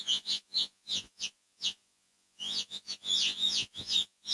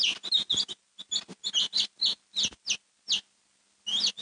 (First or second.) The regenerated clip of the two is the first